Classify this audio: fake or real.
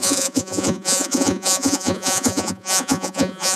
fake